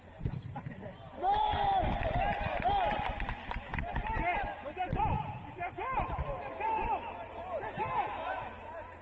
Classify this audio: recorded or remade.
recorded